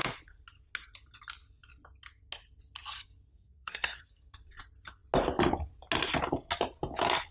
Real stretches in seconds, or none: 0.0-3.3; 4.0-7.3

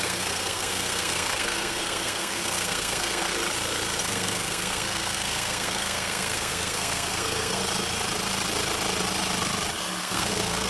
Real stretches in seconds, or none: 3.3-4.0; 7.6-10.0

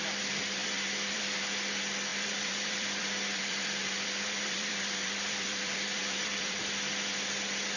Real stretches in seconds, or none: 0.0-0.6; 1.4-2.1; 6.6-7.8

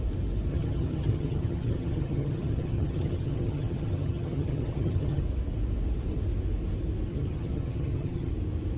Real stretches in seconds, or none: 0.0-0.5; 5.2-7.1; 8.3-8.8

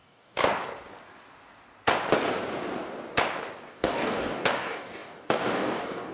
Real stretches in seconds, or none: 0.4-3.7

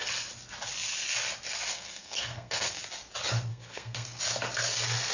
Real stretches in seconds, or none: 0.0-1.7; 2.8-3.5; 4.2-5.1

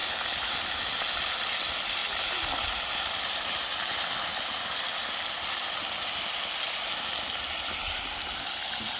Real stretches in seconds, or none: 0.0-2.0; 3.6-9.0

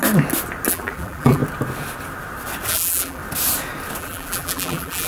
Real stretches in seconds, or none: 0.0-0.7; 1.4-2.7; 3.2-4.0